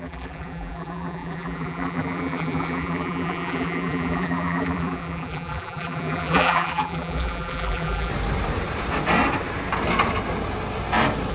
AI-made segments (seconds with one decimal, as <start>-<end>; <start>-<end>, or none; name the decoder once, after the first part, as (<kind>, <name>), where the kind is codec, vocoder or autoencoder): 0.0-8.1 (vocoder, BigVGAN v2)